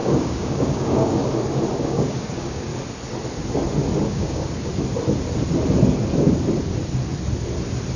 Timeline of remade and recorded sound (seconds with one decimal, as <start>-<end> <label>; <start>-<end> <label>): 0.0-1.2 remade; 1.2-1.8 recorded; 1.8-2.7 remade; 2.7-4.0 recorded; 4.0-4.7 remade; 4.7-8.0 recorded